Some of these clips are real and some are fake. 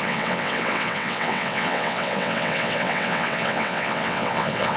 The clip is fake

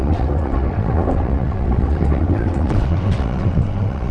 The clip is fake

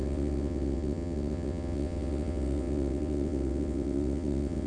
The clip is fake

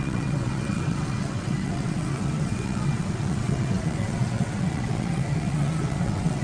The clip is fake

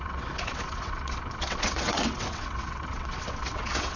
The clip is fake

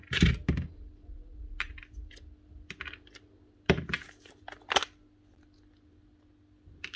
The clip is real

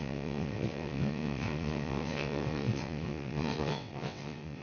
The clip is fake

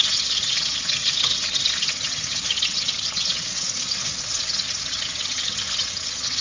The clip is fake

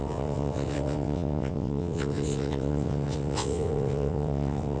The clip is fake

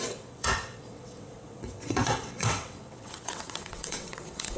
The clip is fake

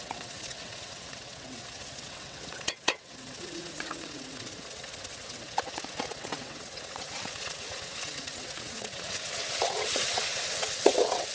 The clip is fake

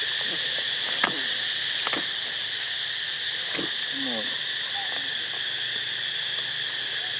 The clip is real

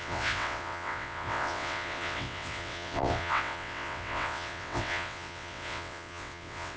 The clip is fake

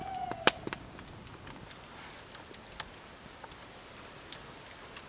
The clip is real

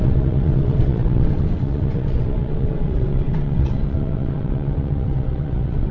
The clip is fake